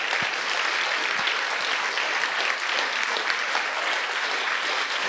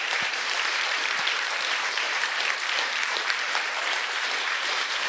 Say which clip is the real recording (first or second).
first